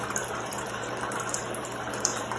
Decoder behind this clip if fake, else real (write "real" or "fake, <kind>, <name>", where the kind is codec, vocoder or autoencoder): fake, vocoder, BigVGAN v2